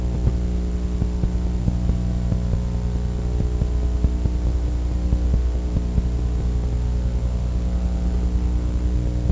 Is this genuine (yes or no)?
yes